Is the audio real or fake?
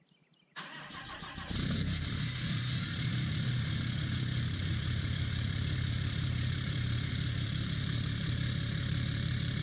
fake